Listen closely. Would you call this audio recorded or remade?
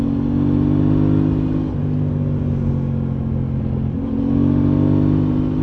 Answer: recorded